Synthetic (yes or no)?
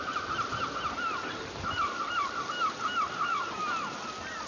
no